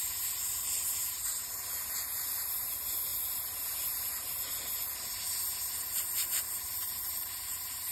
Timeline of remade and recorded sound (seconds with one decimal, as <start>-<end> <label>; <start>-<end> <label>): 0.0-1.0 recorded; 1.0-1.5 remade; 1.5-7.9 recorded